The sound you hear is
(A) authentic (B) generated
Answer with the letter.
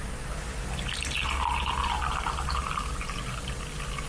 A